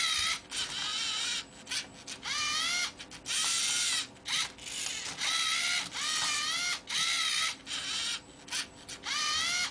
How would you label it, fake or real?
real